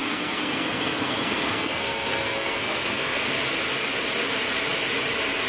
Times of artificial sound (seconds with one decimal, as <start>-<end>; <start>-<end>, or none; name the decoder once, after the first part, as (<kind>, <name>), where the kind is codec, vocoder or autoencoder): 0.0-3.3 (codec, SNAC)